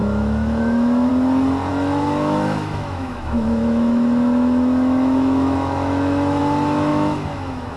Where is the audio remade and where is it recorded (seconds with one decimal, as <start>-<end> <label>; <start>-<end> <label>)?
0.0-1.1 remade; 1.1-1.7 recorded; 1.7-6.4 remade; 6.4-6.9 recorded; 6.9-7.8 remade